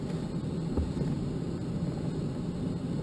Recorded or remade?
recorded